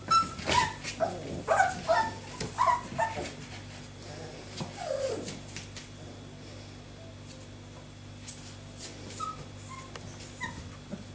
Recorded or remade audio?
recorded